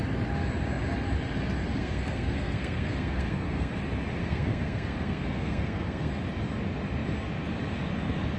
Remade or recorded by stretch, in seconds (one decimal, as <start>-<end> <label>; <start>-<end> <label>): 0.0-1.8 recorded; 1.8-3.8 remade; 3.8-4.2 recorded; 4.2-6.1 remade; 6.1-8.4 recorded